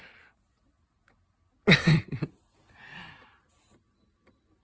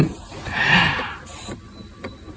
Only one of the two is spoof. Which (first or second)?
second